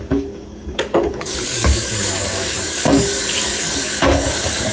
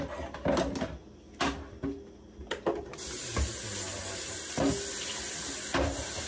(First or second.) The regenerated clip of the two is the first